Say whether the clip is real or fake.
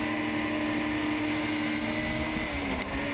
real